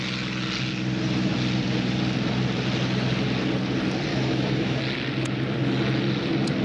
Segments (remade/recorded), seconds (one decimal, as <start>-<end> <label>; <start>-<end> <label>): 0.0-4.1 recorded; 4.1-4.8 remade; 4.8-6.6 recorded

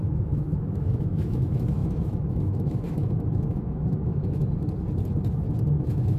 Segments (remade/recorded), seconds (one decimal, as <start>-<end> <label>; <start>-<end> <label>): 0.0-4.4 remade; 4.4-5.8 recorded; 5.8-6.2 remade

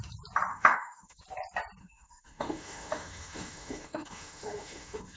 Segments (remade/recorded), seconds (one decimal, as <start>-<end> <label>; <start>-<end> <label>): 0.0-0.5 recorded; 0.5-1.2 remade; 1.2-1.8 recorded; 1.8-5.2 remade

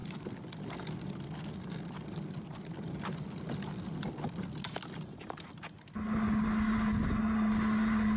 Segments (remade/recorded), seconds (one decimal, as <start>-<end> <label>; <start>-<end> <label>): 0.0-8.2 recorded

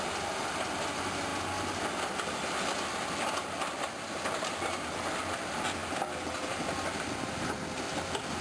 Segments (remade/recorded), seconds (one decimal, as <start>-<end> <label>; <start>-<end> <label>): 0.0-8.4 recorded

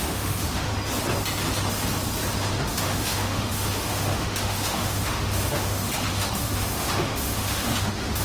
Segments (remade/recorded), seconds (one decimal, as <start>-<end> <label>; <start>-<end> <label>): 0.0-0.7 remade; 0.7-2.6 recorded; 2.6-8.2 remade

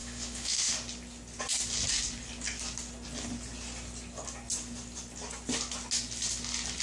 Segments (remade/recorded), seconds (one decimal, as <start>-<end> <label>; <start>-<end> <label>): 0.0-0.7 remade; 0.7-6.8 recorded